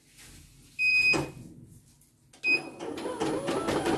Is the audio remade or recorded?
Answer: recorded